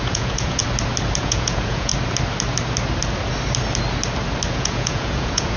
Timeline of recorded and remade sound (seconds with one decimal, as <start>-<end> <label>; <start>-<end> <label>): 0.0-0.6 remade; 0.6-1.2 recorded; 1.2-1.9 remade; 1.9-4.5 recorded; 4.5-5.6 remade